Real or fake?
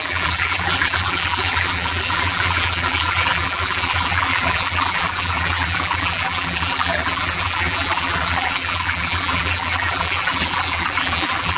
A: fake